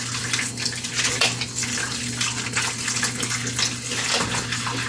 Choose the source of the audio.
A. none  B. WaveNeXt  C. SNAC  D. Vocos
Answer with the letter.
A